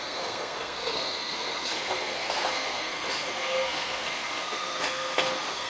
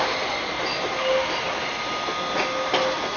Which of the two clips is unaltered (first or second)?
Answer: second